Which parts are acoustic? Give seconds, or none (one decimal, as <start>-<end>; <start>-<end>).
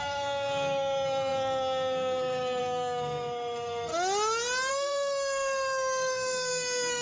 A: 3.9-4.7